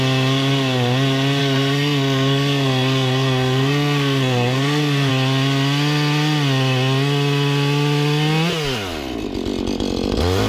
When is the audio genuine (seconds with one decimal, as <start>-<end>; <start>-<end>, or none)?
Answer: 0.0-1.4; 5.1-10.5